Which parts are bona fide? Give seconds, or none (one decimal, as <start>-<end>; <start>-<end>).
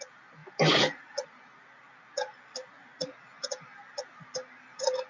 0.0-5.1